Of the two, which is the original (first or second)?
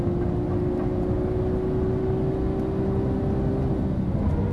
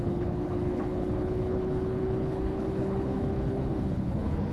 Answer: first